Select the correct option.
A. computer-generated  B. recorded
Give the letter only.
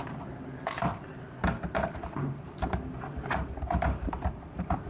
A